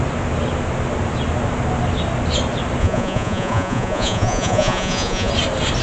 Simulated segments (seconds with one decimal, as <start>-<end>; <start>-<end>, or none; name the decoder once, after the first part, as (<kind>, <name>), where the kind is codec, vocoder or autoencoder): 2.8-5.3 (vocoder, Vocos)

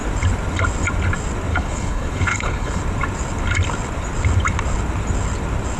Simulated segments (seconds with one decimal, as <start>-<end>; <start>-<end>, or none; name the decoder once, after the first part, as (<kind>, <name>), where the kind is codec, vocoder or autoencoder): 1.5-2.8 (codec, HILCodec)

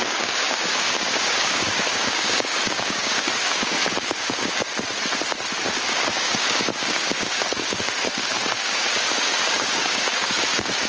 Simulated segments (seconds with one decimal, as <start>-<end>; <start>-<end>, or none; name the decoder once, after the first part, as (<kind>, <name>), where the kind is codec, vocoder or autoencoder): 0.0-4.7 (codec, DAC); 5.8-10.9

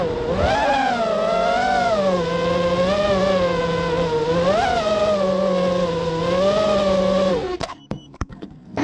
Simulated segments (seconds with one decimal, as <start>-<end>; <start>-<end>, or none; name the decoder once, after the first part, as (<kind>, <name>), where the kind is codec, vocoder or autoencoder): 7.3-8.8 (codec, SNAC)